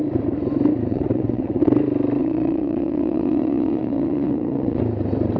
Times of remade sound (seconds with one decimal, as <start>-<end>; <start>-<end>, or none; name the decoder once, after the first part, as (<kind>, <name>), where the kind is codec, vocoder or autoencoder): 0.9-1.7 (vocoder, WaveNeXt); 2.2-4.8

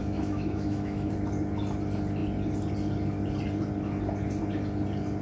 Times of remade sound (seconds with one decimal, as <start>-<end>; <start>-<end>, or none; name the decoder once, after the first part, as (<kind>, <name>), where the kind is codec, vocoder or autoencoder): 0.0-1.1 (autoencoder, DAC-VAE)

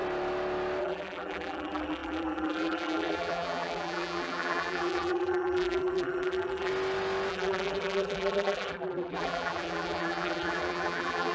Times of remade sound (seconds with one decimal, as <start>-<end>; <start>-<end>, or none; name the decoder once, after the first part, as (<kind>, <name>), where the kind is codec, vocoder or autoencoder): 0.8-6.7 (vocoder, BigVGAN v2); 7.3-11.3